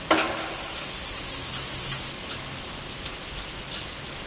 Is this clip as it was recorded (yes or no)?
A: yes